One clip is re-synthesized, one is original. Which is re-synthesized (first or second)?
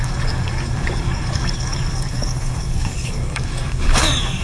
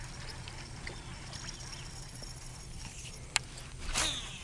first